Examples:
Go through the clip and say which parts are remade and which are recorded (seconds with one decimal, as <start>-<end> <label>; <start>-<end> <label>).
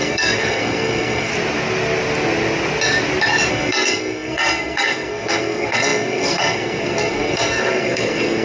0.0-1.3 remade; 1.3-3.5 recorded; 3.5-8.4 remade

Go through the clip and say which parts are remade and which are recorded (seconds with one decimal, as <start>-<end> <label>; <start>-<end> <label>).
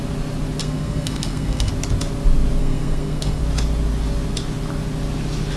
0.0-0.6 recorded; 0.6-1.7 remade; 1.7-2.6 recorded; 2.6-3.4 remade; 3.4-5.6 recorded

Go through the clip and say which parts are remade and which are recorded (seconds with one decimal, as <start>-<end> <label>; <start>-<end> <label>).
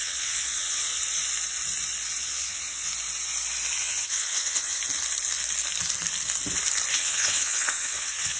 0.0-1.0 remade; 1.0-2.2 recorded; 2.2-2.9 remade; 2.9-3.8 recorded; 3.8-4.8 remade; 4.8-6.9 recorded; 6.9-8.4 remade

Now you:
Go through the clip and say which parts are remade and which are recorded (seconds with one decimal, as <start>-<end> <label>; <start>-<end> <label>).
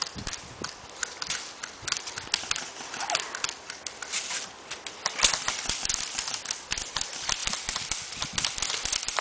0.0-7.4 recorded; 7.4-8.4 remade; 8.4-9.2 recorded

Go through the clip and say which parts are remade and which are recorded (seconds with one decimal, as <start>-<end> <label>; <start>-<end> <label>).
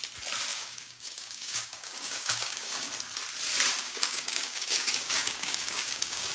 0.0-0.5 recorded; 0.5-2.9 remade; 2.9-3.8 recorded; 3.8-6.3 remade